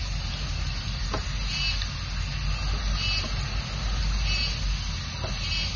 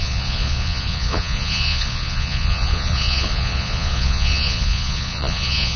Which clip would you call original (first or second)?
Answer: first